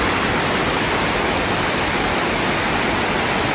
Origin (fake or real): real